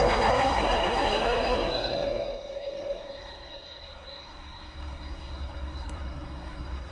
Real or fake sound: fake